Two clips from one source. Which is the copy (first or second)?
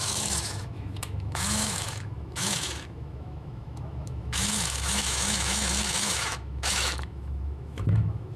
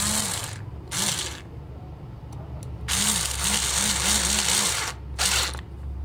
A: first